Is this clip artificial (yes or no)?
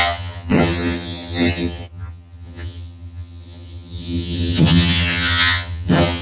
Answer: yes